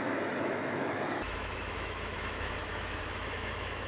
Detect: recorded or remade remade